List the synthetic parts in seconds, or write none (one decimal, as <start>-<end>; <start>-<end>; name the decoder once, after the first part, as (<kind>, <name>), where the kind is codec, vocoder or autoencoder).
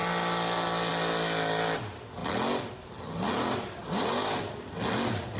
none